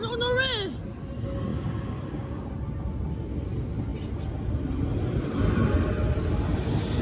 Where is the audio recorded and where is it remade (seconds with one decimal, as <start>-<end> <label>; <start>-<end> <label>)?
0.0-1.5 recorded; 1.5-2.5 remade; 2.5-7.0 recorded